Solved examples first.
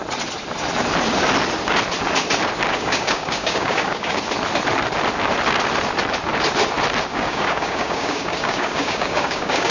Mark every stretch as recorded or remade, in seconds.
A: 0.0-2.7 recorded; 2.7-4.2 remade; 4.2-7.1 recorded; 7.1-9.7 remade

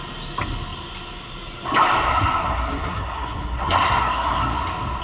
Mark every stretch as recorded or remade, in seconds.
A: 0.0-2.1 recorded; 2.1-4.6 remade; 4.6-5.0 recorded